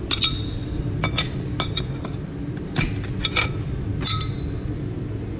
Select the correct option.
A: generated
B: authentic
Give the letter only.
B